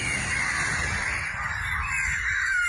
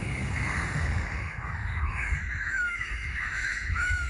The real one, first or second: first